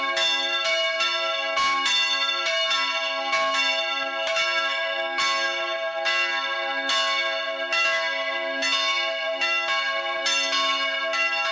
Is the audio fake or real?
real